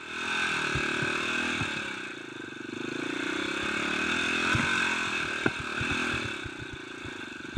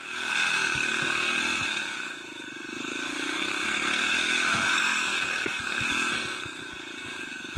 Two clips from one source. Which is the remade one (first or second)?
second